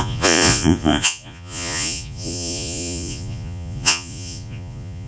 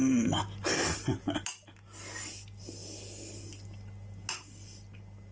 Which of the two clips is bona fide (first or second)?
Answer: second